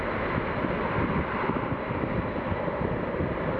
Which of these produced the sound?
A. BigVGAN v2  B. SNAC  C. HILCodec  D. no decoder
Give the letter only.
D